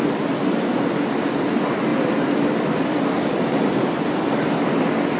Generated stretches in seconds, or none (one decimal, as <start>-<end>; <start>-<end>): none